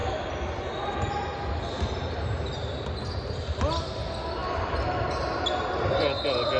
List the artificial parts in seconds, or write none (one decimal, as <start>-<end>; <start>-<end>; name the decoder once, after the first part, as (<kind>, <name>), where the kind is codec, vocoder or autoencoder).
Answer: none